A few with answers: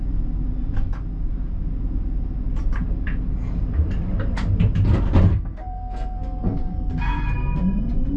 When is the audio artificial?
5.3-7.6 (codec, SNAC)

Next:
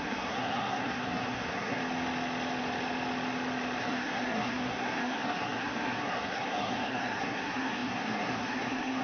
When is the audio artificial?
0.0-1.8 (codec, SNAC); 3.8-9.0

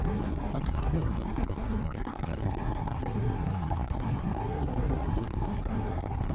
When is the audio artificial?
0.0-6.3 (codec, SNAC)

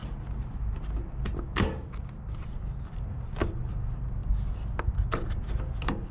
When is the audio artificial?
none